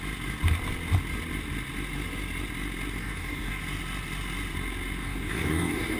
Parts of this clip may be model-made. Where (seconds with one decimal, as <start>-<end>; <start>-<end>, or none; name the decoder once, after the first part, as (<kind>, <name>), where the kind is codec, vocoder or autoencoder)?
3.0-3.6 (codec, DAC); 5.0-6.0